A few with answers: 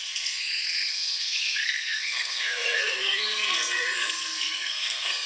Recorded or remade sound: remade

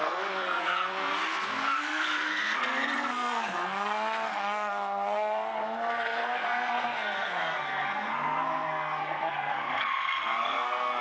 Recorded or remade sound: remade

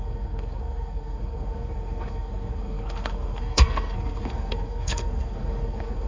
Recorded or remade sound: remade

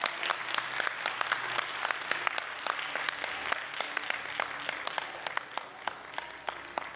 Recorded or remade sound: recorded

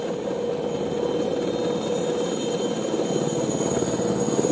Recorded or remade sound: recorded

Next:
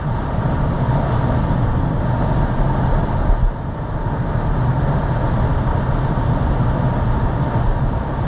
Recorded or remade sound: recorded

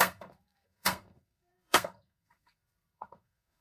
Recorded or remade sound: remade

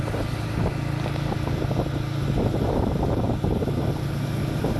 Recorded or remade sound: recorded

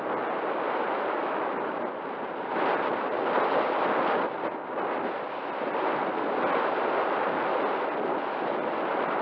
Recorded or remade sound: recorded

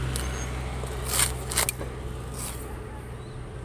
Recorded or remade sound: recorded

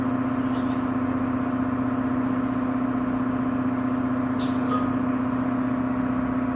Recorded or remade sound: recorded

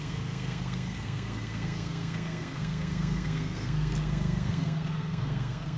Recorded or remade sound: remade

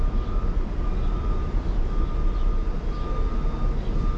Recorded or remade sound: recorded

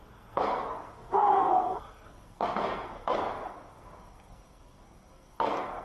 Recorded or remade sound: remade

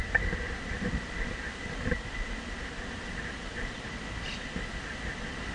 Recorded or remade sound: recorded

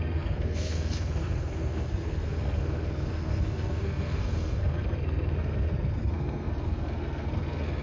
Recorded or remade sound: remade